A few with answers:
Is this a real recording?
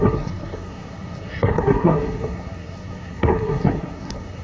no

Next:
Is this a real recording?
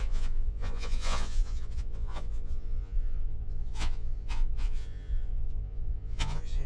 no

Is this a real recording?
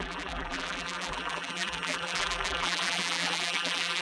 no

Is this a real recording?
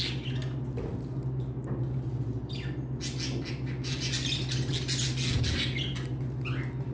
yes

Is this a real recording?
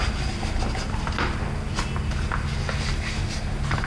yes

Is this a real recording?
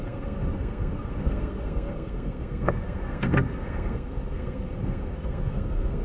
no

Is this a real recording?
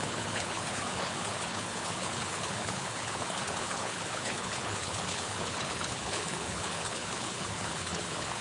no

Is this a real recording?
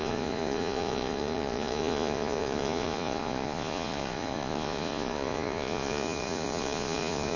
no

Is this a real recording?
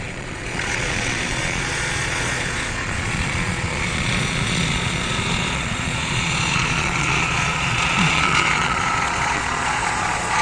no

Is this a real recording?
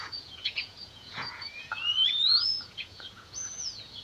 no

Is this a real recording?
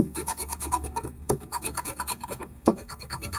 no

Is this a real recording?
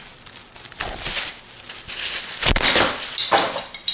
yes